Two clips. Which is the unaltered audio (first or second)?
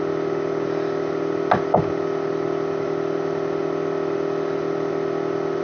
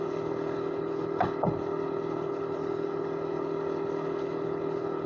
first